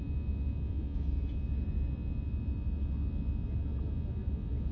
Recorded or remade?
recorded